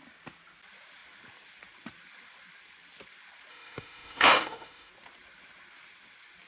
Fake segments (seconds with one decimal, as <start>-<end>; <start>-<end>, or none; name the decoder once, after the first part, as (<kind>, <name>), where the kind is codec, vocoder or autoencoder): 3.5-4.9 (autoencoder, DAC-VAE)